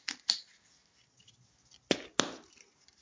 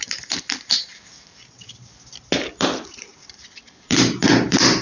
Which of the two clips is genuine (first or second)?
first